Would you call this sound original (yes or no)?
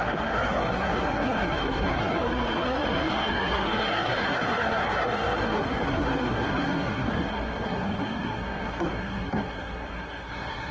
no